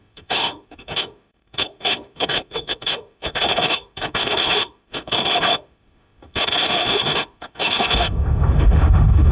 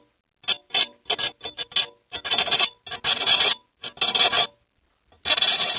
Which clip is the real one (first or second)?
second